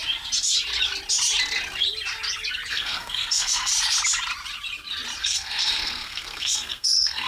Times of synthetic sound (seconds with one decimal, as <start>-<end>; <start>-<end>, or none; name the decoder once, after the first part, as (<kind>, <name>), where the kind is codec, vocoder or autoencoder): 2.7-3.7 (codec, SNAC); 5.2-7.3